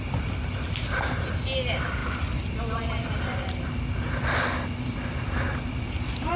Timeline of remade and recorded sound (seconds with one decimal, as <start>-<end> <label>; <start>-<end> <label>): 0.0-6.4 recorded